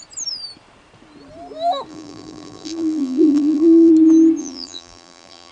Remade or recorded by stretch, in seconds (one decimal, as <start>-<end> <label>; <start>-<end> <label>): 0.0-1.9 recorded; 1.9-3.9 remade; 3.9-4.4 recorded; 4.4-5.5 remade